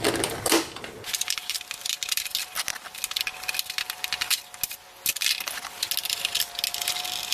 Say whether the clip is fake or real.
real